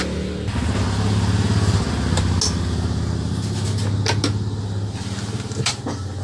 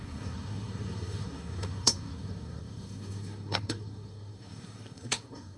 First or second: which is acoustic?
first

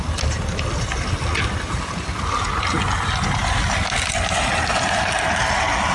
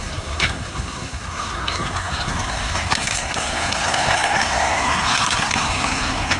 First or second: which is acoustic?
first